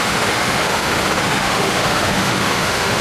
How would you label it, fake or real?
fake